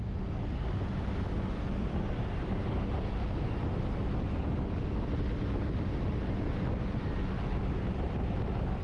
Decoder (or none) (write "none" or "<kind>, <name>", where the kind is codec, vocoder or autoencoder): none